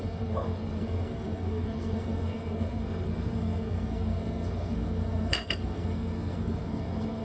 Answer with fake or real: fake